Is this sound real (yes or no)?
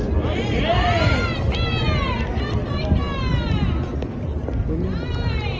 yes